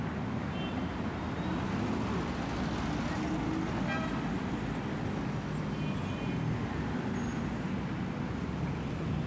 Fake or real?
real